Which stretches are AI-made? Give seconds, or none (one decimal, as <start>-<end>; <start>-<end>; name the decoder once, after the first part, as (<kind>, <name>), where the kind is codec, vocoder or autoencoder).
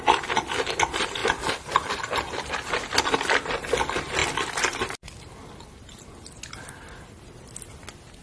none